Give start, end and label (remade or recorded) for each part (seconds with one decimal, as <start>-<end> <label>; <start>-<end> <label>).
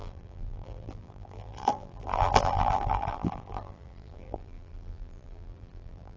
0.0-6.2 remade